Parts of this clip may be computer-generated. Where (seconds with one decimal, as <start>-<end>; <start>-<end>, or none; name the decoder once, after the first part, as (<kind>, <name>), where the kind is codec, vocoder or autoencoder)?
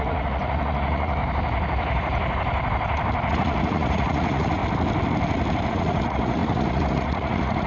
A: 0.0-1.2 (vocoder, Vocos); 3.3-4.6; 5.7-7.7